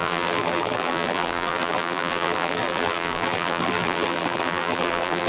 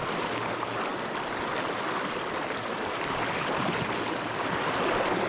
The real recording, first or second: second